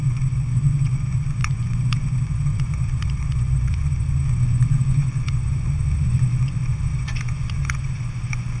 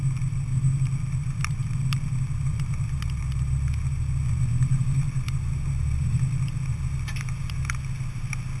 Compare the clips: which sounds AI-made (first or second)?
first